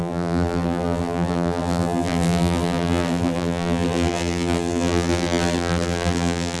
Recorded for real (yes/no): no